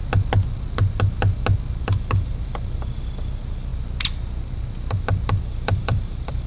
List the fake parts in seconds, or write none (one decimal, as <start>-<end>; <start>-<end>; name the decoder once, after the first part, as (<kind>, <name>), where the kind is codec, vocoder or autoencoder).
1.8-3.7 (vocoder, BigVGAN v2); 5.4-6.5